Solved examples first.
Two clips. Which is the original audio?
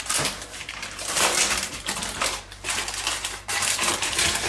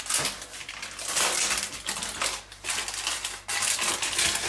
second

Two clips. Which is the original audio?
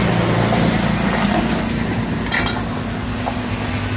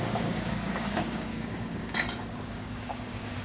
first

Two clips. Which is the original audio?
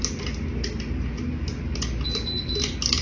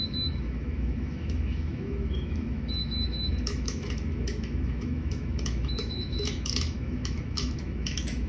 first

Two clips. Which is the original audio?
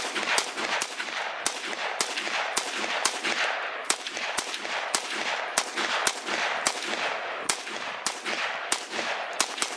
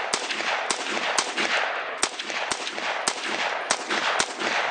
second